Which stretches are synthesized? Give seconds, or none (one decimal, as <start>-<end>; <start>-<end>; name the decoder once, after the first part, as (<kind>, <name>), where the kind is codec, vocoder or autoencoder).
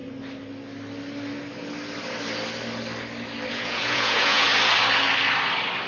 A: 3.5-4.5 (vocoder, Vocos)